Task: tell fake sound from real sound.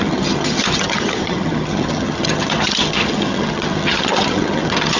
fake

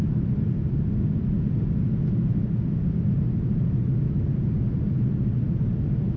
real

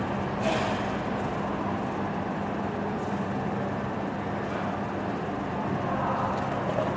real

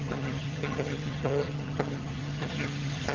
fake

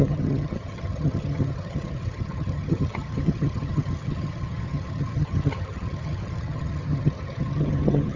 fake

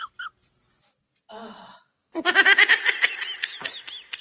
real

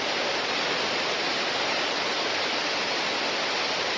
real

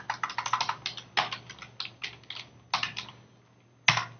real